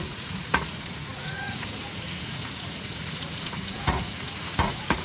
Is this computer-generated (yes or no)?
yes